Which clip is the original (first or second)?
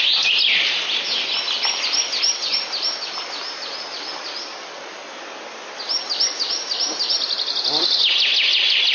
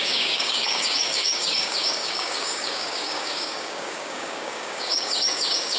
first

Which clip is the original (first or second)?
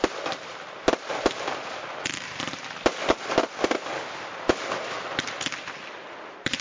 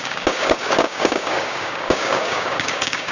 first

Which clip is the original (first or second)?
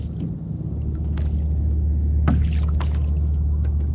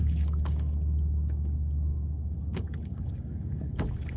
first